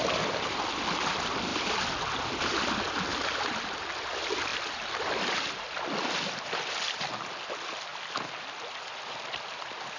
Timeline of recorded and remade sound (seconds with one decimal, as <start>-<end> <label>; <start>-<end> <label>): 0.0-10.0 recorded